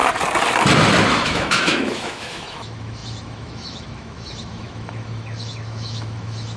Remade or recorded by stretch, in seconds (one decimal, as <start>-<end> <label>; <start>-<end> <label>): 0.0-1.2 recorded; 1.2-6.6 remade